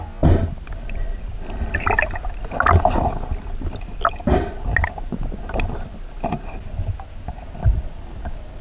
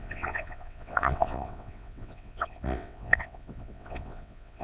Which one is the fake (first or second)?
second